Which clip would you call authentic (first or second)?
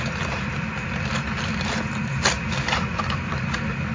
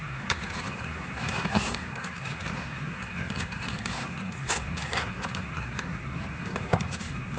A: first